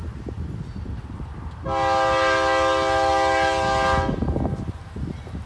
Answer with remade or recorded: recorded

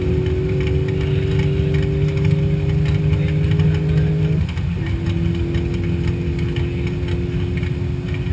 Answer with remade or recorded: recorded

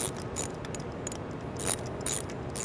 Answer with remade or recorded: recorded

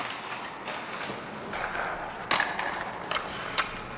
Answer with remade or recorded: recorded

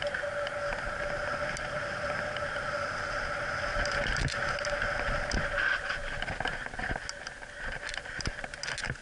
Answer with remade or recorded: recorded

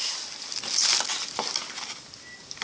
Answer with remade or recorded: recorded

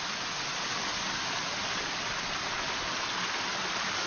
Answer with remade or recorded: recorded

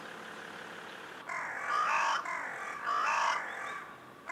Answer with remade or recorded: recorded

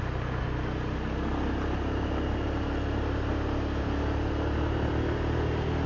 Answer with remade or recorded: recorded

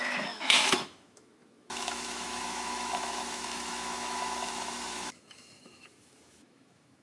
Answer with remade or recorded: remade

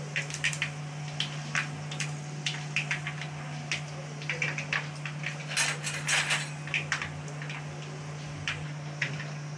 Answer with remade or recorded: recorded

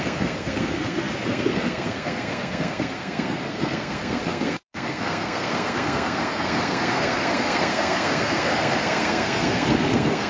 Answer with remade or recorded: remade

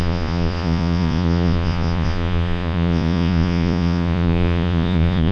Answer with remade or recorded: remade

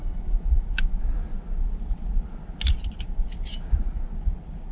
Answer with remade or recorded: recorded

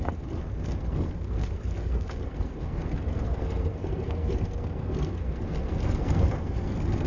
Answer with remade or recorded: remade